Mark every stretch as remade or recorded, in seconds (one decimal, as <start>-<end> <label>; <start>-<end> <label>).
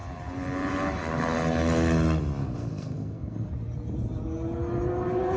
0.0-2.4 recorded; 2.4-3.5 remade; 3.5-5.4 recorded